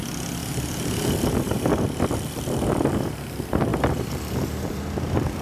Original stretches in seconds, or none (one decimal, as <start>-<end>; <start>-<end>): 0.0-0.4; 2.7-3.7